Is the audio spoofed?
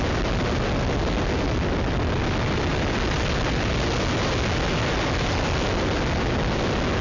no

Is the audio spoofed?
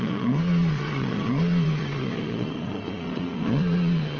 yes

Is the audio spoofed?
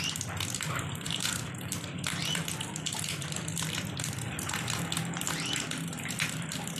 yes